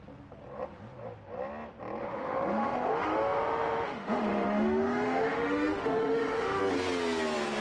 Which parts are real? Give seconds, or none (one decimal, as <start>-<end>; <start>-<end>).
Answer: 0.0-2.0; 6.6-7.6